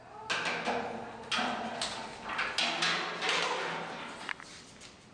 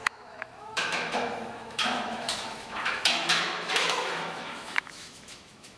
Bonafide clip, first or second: first